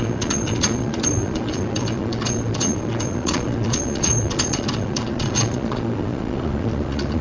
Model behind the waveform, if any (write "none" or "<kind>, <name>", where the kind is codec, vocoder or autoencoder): vocoder, Vocos